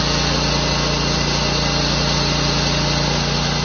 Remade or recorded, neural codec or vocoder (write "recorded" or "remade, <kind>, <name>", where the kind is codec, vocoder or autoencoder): recorded